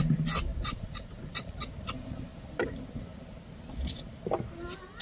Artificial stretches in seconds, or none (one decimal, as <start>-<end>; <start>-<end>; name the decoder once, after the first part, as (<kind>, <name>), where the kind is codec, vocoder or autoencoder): 0.5-1.6 (vocoder, BigVGAN v2)